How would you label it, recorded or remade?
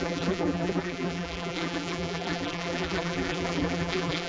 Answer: remade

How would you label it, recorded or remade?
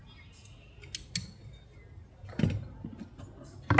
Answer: recorded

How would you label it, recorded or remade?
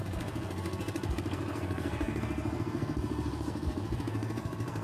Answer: remade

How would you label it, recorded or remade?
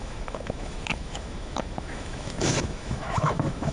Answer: remade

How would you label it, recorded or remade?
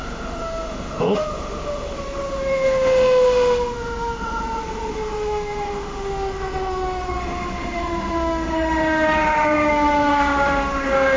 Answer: remade